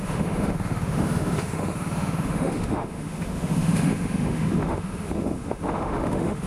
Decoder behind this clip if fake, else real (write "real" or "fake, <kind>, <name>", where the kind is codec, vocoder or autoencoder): fake, autoencoder, DAC-VAE